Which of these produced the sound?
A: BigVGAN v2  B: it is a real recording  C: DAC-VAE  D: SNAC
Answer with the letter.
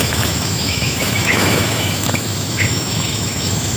C